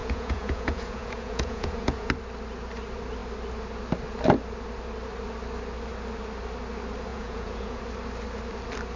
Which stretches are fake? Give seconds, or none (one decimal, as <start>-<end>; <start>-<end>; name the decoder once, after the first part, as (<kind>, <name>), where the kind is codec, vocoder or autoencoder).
0.0-2.1 (vocoder, Vocos); 7.1-7.8